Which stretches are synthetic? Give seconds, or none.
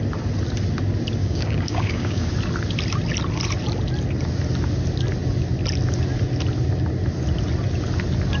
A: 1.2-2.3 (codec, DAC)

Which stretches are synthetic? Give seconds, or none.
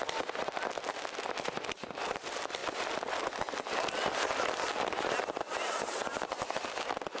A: none